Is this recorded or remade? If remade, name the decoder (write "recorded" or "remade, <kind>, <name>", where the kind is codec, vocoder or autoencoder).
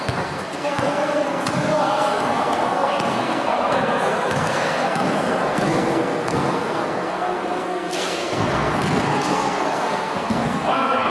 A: remade, codec, SNAC